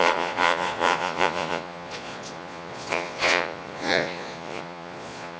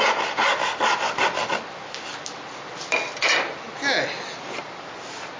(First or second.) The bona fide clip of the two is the second